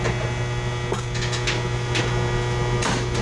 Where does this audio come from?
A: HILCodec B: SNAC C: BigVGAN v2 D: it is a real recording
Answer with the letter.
D